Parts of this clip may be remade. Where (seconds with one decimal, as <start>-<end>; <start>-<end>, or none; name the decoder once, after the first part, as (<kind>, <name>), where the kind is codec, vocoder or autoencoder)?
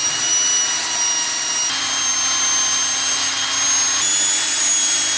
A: none